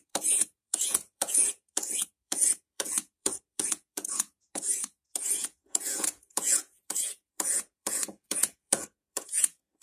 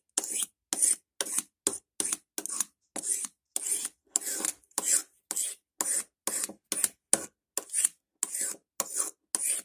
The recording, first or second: second